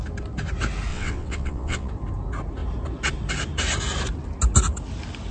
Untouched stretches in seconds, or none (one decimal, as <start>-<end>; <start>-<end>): 0.0-0.9; 1.9-5.3